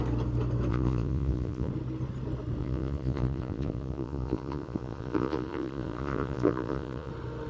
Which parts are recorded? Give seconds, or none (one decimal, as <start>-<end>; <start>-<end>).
0.0-0.7; 1.7-2.6; 7.1-7.5